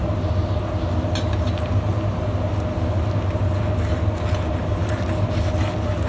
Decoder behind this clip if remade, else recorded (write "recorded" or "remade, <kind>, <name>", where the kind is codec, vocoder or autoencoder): recorded